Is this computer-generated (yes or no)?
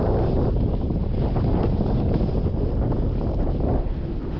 no